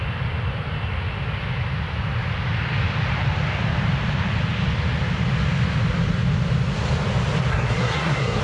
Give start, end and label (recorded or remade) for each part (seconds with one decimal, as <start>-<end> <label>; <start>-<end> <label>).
0.0-7.5 recorded; 7.5-8.4 remade